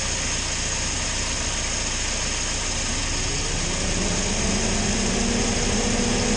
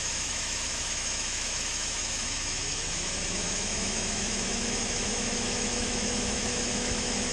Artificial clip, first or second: second